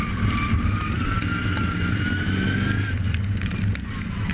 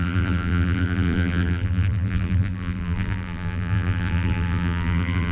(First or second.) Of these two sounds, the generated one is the second